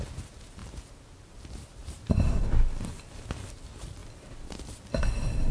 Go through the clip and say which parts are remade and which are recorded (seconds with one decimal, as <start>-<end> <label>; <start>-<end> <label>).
0.0-1.8 recorded; 1.8-2.4 remade; 2.4-5.5 recorded